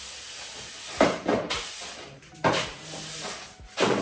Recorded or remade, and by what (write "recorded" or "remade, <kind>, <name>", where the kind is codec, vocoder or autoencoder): recorded